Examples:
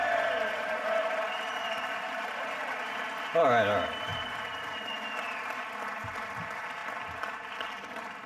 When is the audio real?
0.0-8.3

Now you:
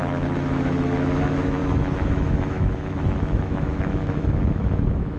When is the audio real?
none